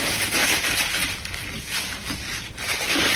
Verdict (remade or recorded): recorded